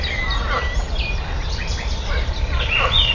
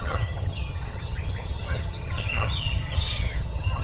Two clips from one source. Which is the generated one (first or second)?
second